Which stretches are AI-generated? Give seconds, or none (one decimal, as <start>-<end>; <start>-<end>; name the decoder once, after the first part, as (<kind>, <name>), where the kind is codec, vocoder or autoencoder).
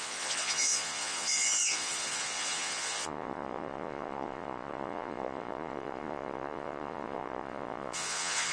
0.0-8.5 (vocoder, Vocos)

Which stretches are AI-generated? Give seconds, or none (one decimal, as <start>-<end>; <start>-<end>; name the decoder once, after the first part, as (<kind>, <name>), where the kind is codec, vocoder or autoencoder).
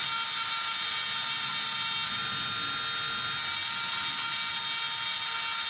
none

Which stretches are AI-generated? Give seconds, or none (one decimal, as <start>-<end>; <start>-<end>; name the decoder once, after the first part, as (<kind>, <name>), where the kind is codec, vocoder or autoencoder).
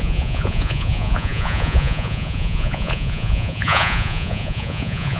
0.0-5.2 (vocoder, Vocos)